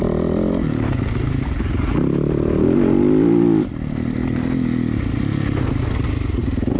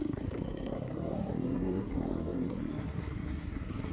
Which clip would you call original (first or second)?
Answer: first